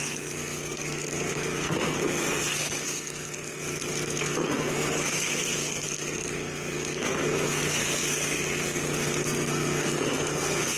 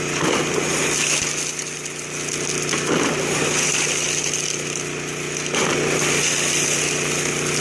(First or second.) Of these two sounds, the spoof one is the first